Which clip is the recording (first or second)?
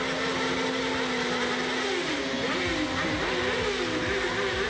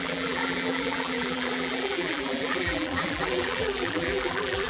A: first